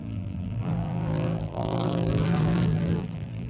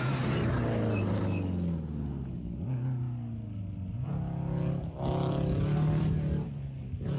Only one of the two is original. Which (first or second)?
second